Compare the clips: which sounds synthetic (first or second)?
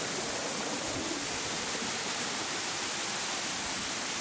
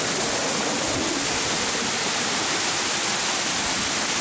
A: first